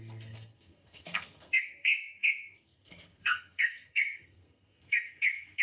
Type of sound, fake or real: fake